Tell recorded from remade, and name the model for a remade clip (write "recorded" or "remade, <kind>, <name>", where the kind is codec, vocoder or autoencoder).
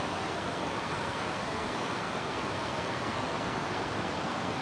remade, codec, SNAC